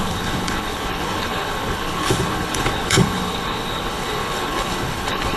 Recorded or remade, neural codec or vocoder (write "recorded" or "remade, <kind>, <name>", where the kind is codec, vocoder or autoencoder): remade, codec, HILCodec